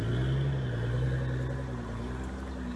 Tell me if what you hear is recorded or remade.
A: recorded